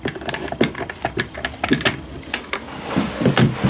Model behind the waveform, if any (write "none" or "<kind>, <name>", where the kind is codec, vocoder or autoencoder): none